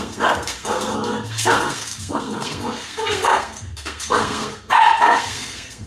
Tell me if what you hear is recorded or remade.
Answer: remade